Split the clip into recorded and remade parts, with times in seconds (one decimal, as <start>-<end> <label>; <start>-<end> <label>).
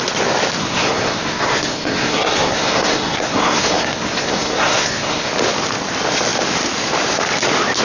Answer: 0.0-0.6 recorded; 0.6-5.3 remade; 5.3-7.8 recorded